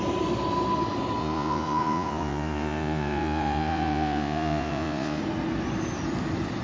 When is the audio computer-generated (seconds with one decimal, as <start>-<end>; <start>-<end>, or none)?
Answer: 1.2-5.2